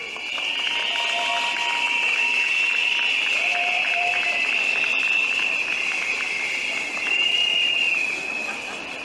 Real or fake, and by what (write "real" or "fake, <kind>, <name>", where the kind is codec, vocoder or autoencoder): real